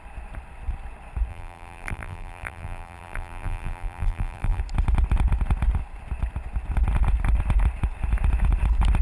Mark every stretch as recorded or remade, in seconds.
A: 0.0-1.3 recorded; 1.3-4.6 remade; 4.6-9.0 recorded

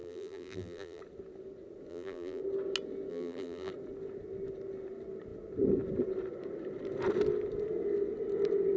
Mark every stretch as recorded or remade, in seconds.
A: 0.0-1.0 remade; 1.0-1.9 recorded; 1.9-2.4 remade; 2.4-3.1 recorded; 3.1-3.7 remade; 3.7-8.8 recorded

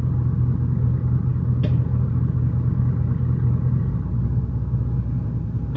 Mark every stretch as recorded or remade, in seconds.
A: 0.0-5.8 recorded

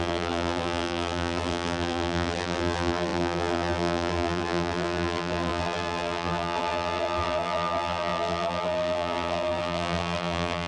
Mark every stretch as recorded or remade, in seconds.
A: 0.0-10.7 remade

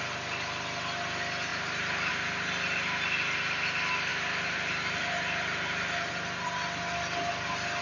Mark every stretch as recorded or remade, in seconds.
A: 0.0-1.5 recorded; 1.5-2.1 remade; 2.1-4.1 recorded; 4.1-6.1 remade; 6.1-7.8 recorded

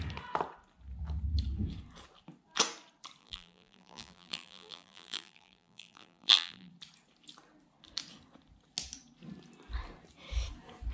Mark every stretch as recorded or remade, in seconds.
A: 0.0-3.2 recorded; 3.2-6.7 remade; 6.7-10.9 recorded

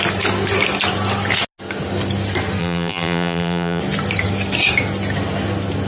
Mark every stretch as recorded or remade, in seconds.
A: 0.0-2.6 recorded; 2.6-3.8 remade; 3.8-5.9 recorded